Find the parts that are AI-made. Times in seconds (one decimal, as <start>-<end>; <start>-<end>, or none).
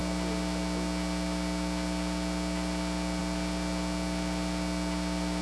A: none